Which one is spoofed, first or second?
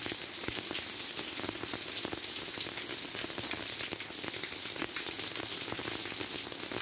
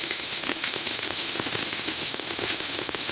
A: second